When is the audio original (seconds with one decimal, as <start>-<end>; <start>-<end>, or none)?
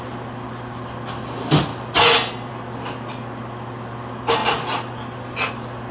0.0-5.9